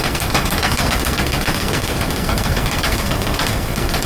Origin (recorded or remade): remade